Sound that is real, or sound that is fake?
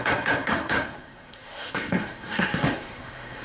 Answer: fake